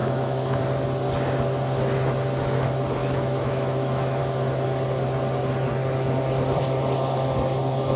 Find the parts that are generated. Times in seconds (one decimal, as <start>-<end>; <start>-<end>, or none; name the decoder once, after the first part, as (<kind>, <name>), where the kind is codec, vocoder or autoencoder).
0.0-0.6 (autoencoder, DAC-VAE); 3.0-4.2